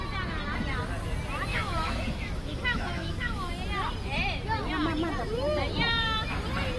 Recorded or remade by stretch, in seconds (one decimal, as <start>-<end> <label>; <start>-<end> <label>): 0.0-1.5 recorded; 1.5-3.5 remade; 3.5-6.8 recorded